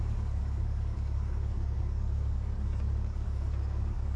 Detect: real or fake fake